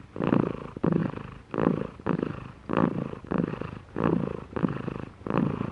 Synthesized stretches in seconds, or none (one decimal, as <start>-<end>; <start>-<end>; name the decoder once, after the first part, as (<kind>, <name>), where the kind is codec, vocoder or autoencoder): 0.0-5.7 (vocoder, BigVGAN v2)